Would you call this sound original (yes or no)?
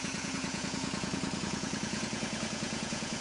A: no